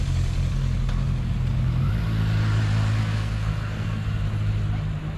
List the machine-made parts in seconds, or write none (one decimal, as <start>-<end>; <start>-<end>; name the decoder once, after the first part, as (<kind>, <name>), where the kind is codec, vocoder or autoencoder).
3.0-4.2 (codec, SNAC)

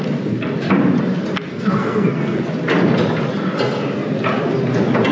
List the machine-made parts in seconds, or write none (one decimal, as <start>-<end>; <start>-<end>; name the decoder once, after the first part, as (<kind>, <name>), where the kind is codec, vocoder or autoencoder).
1.5-2.4 (codec, SNAC)

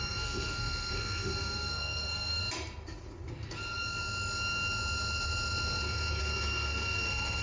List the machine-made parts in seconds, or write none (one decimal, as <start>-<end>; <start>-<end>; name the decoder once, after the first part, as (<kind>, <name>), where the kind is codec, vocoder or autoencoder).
0.0-2.4 (codec, SNAC); 6.2-7.4

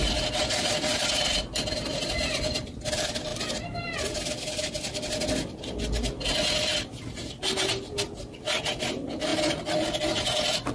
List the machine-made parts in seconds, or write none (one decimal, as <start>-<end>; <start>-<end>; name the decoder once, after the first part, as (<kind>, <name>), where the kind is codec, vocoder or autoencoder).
none

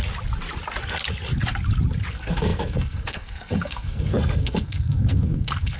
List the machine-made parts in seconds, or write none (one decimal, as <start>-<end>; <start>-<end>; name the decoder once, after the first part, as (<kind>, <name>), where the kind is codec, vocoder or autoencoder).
2.1-5.8 (codec, SNAC)

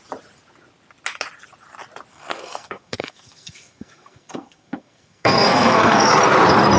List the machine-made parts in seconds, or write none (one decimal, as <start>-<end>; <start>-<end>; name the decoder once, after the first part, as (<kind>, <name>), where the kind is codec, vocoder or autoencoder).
2.1-6.2 (codec, SNAC)

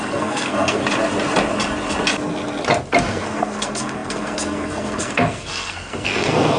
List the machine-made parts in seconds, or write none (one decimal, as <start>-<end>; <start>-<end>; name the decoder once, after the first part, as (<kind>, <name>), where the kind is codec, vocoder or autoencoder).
0.0-0.8 (codec, SNAC); 3.0-6.6